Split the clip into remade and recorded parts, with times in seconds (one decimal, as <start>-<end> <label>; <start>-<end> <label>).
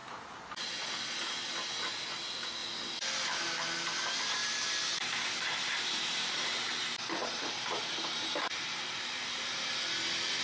0.0-4.4 recorded; 4.4-6.8 remade; 6.8-7.2 recorded; 7.2-9.7 remade; 9.7-10.4 recorded